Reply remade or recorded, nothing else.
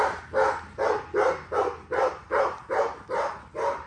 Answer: recorded